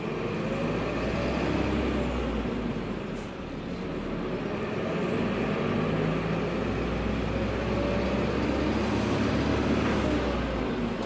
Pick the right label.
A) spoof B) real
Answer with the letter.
B